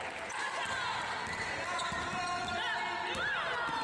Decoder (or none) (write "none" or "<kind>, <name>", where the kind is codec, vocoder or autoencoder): none